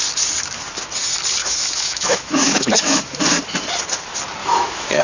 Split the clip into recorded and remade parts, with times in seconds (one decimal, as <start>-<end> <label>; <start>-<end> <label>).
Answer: 0.0-1.4 recorded; 1.4-3.2 remade; 3.2-4.4 recorded; 4.4-5.0 remade